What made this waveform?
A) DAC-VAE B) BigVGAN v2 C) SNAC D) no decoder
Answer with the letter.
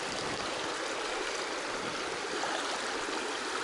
D